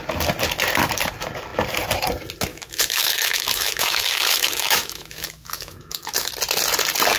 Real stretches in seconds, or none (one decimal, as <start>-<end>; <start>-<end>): 0.0-2.5; 6.3-7.2